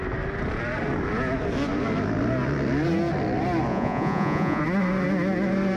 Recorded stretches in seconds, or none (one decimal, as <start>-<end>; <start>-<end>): 0.0-3.7; 4.6-5.8